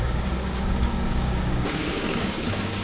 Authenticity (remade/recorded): remade